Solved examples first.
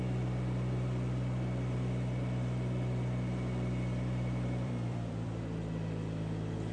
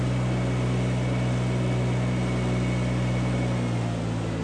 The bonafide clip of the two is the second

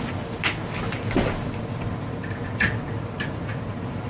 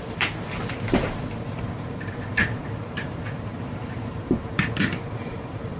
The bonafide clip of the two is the first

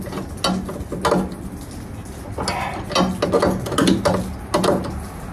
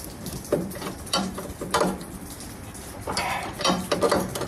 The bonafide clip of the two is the first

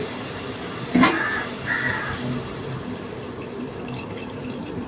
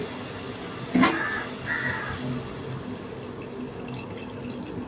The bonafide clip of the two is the second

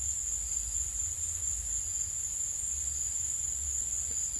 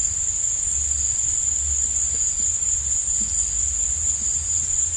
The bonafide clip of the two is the first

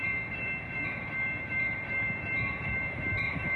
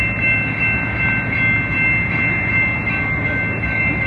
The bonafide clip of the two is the second